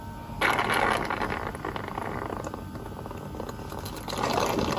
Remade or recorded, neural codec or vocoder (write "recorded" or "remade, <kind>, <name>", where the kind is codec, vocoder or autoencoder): recorded